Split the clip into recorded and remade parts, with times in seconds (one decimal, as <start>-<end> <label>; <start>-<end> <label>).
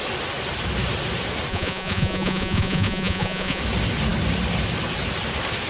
0.0-1.5 recorded; 1.5-3.6 remade; 3.6-5.7 recorded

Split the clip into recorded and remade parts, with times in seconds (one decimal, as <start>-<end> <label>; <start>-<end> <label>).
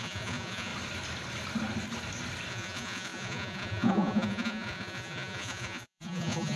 0.0-0.7 remade; 0.7-2.5 recorded; 2.5-6.6 remade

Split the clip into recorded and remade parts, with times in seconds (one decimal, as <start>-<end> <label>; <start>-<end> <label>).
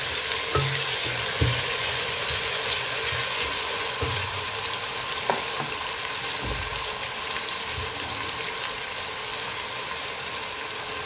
0.0-0.9 recorded; 0.9-4.5 remade; 4.5-11.1 recorded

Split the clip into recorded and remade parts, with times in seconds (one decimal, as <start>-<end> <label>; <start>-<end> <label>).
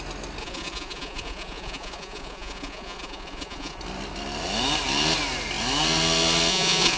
0.0-0.4 recorded; 0.4-3.8 remade; 3.8-6.5 recorded; 6.5-7.0 remade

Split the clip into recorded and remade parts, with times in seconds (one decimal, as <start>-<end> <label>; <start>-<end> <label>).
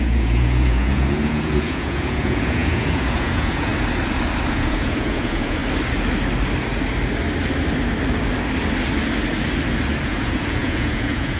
0.0-3.7 remade; 3.7-4.5 recorded; 4.5-5.6 remade; 5.6-10.0 recorded; 10.0-11.4 remade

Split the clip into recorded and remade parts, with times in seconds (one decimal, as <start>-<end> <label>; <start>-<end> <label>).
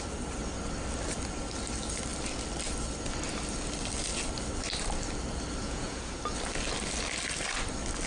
0.0-5.6 recorded; 5.6-6.2 remade; 6.2-8.1 recorded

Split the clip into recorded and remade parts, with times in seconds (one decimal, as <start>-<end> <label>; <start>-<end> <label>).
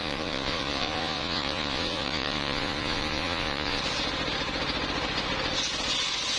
0.0-3.8 remade; 3.8-6.4 recorded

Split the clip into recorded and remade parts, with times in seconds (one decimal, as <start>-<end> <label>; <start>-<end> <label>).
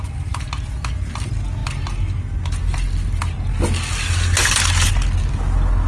0.0-5.9 recorded